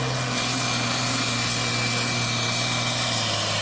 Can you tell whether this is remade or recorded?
recorded